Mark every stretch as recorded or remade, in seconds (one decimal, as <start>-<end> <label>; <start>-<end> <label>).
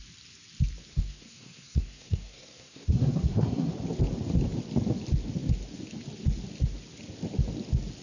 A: 0.0-0.9 recorded; 0.9-3.7 remade; 3.7-8.0 recorded